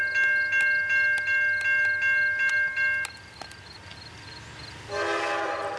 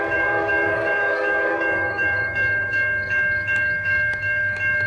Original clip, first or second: first